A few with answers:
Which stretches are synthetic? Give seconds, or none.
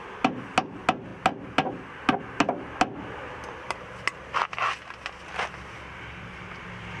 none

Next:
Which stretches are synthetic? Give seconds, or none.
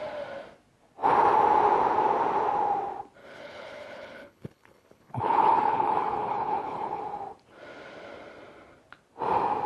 3.2-7.0 (codec, HILCodec)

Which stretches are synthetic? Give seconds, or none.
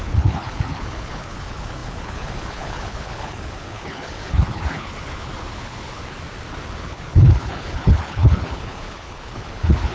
0.0-6.0 (codec, HILCodec); 6.8-9.9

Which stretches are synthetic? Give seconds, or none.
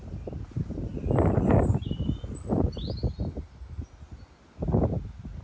none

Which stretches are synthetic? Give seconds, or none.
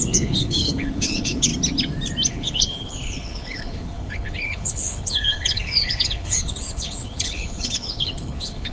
0.0-1.5 (codec, HILCodec); 2.3-8.7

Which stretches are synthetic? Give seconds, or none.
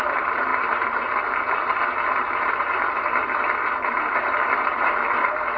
none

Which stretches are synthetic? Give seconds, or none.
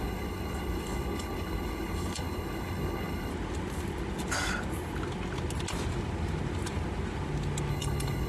0.0-3.3 (codec, HILCodec); 7.7-8.3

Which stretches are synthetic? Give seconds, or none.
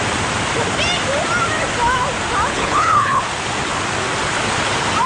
2.5-3.2 (codec, HILCodec)